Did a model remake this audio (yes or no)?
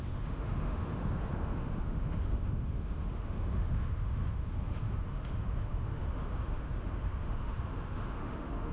yes